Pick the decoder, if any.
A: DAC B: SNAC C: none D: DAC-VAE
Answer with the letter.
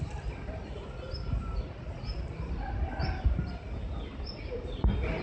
C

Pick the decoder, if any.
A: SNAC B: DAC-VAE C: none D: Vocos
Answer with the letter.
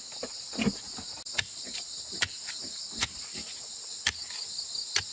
C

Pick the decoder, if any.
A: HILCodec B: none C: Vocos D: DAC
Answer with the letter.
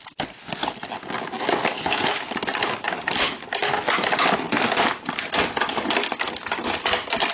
B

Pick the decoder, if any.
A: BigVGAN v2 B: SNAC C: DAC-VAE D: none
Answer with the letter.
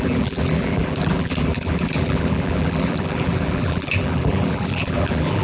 A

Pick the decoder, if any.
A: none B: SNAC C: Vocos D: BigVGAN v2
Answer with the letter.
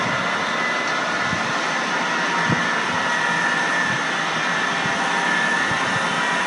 A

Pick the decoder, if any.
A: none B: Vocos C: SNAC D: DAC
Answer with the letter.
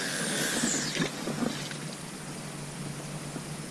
A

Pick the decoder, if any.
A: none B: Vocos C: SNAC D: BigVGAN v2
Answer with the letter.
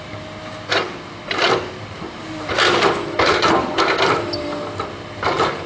A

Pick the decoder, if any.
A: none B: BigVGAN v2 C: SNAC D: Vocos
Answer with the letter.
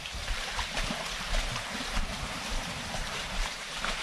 B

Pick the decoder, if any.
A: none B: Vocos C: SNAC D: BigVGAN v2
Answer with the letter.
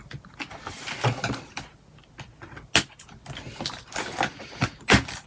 A